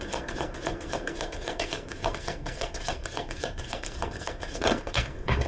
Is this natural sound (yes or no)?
no